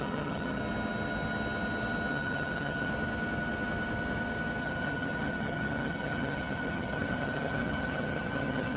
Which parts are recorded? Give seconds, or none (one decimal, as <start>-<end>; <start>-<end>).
0.6-2.1; 2.9-4.6